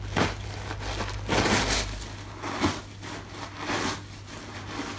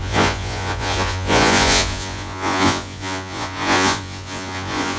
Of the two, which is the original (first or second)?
first